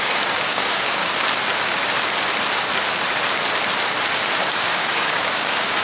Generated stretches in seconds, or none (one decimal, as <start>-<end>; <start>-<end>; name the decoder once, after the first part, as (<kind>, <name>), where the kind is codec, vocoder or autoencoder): 0.0-1.0 (codec, DAC); 4.5-5.8